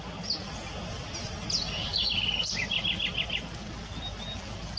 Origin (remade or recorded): recorded